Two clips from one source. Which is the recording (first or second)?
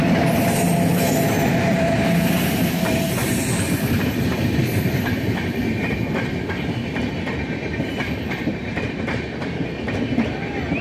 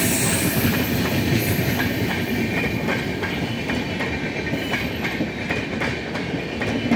second